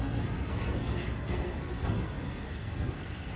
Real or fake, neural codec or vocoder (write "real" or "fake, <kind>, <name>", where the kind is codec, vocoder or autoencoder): fake, codec, SNAC